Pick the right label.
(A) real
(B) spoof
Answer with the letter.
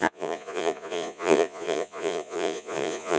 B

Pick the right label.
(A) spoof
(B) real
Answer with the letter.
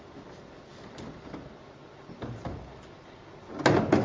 B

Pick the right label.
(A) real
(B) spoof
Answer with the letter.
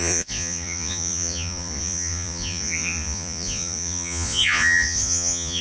B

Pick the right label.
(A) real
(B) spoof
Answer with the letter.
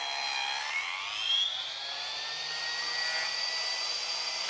A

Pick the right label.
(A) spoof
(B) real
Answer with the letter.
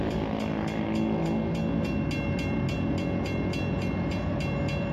B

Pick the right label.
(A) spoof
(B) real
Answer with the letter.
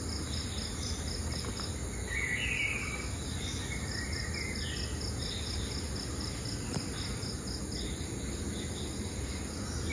B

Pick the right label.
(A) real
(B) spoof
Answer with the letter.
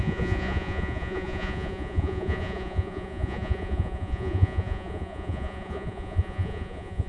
B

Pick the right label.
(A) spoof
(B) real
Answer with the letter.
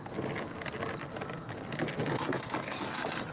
B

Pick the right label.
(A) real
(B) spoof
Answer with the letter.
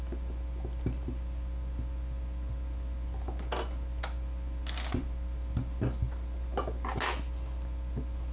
A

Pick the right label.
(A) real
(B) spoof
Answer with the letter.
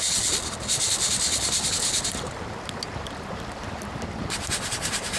A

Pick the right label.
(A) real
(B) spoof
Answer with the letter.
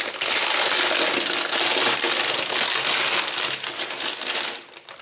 A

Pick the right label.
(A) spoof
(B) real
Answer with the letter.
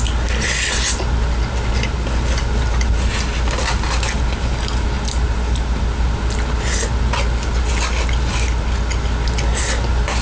B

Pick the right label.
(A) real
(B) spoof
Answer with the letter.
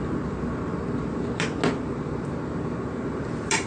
A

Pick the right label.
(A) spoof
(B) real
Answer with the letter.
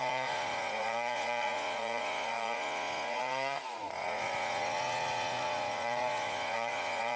A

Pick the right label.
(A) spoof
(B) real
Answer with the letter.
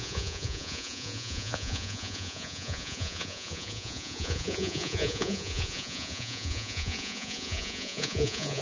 A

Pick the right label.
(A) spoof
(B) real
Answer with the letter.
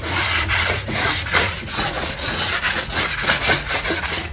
A